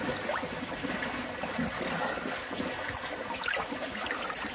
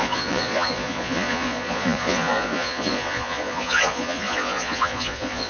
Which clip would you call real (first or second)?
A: first